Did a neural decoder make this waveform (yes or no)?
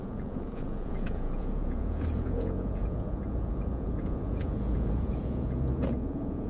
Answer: yes